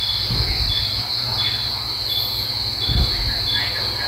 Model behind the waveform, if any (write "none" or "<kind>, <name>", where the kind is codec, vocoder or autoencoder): none